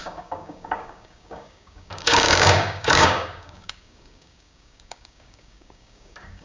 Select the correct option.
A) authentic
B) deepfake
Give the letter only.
B